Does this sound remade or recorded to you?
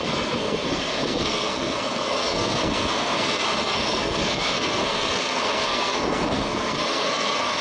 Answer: remade